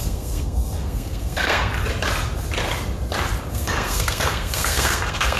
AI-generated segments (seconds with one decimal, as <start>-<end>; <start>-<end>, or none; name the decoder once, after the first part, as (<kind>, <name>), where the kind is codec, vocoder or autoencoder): 0.0-1.7 (codec, SNAC); 3.5-5.4